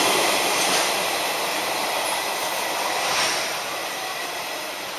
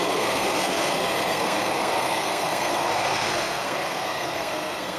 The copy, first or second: second